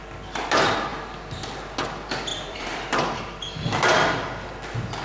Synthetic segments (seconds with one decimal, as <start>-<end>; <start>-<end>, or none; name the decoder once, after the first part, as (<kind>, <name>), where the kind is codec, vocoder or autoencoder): 2.3-3.2 (vocoder, BigVGAN v2)